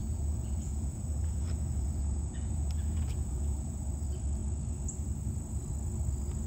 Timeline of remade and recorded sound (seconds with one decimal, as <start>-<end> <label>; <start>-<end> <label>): 0.0-3.9 remade; 3.9-6.5 recorded